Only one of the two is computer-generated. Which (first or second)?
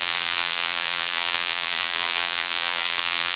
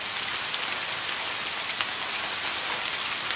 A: first